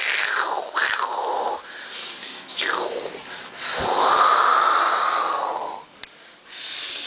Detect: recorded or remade recorded